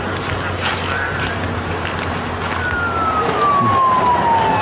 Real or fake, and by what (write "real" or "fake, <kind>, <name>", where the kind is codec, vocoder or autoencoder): real